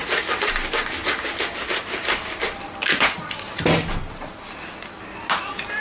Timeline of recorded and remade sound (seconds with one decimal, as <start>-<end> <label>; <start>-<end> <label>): 0.0-5.8 recorded